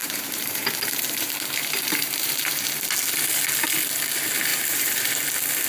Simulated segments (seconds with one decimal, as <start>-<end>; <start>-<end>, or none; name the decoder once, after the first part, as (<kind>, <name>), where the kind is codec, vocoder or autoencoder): 0.0-2.6 (vocoder, BigVGAN v2); 4.5-5.1